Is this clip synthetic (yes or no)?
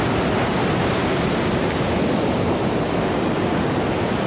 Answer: no